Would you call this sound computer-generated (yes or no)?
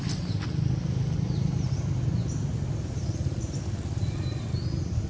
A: no